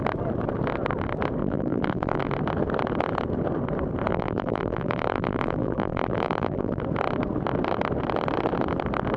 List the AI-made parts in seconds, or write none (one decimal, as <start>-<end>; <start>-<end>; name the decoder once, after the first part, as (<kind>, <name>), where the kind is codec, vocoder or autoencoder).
1.4-2.2 (vocoder, BigVGAN v2); 4.1-6.8